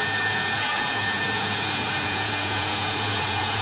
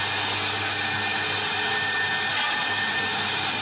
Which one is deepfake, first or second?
first